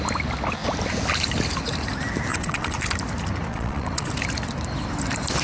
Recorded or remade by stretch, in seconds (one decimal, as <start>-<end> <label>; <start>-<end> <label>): 0.0-2.3 recorded; 2.3-2.8 remade; 2.8-3.5 recorded; 3.5-4.1 remade; 4.1-5.4 recorded